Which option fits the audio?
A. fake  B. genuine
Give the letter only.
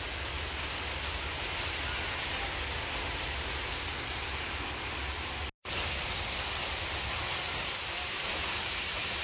B